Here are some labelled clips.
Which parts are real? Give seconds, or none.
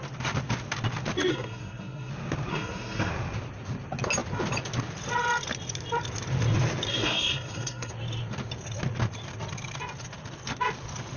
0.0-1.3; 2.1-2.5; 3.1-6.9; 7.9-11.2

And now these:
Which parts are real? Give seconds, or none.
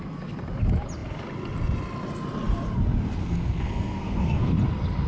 0.0-3.2; 4.5-5.1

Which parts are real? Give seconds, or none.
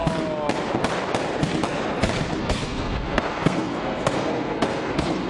0.0-2.4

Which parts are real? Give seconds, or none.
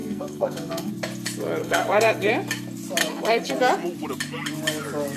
0.9-1.6; 2.3-3.0; 3.5-5.2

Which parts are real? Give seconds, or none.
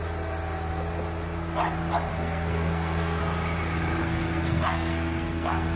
0.0-2.1; 3.2-4.0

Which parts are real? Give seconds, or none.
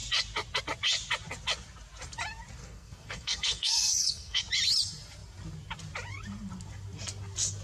0.0-2.6; 4.4-7.6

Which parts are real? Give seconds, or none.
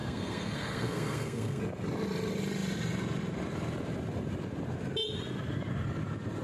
1.6-6.4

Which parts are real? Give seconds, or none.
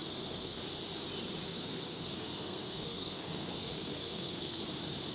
0.6-1.5; 4.6-5.1